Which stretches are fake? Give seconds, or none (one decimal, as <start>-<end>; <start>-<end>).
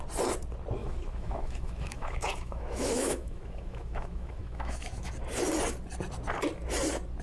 0.8-5.1